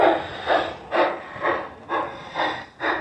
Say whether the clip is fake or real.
real